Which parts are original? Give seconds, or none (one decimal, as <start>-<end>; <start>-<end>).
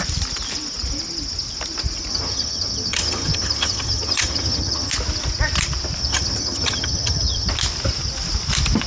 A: 0.0-2.1; 4.9-6.0; 7.5-8.9